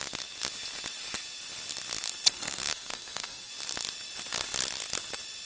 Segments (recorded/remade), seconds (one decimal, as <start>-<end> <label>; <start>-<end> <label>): 0.0-2.3 recorded; 2.3-3.5 remade; 3.5-5.4 recorded